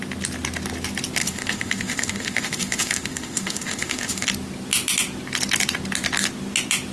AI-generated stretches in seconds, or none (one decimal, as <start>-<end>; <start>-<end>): 1.2-4.3